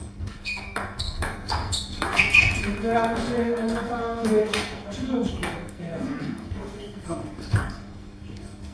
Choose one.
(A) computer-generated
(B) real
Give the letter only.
A